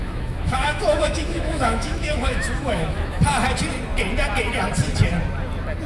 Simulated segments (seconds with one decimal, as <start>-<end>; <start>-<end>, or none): 0.0-3.2